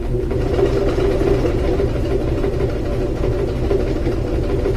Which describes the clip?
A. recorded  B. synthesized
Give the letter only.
A